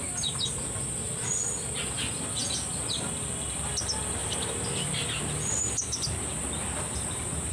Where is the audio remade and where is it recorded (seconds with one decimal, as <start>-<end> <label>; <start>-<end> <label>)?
0.0-7.5 recorded